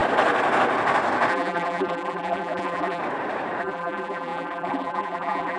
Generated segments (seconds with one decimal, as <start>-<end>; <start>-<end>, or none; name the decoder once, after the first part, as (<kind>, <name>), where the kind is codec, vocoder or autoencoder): 1.3-3.0 (vocoder, BigVGAN v2); 3.6-5.6